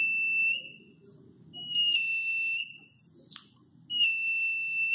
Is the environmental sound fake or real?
real